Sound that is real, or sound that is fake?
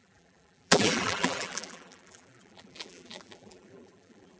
fake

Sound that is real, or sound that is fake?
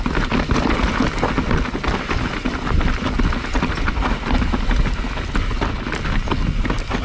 real